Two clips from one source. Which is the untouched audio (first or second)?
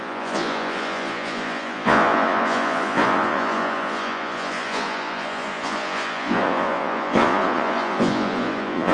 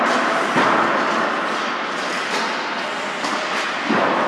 second